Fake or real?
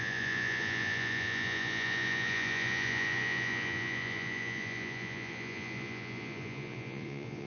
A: fake